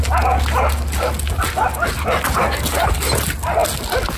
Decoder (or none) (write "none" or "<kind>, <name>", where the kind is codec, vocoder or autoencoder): none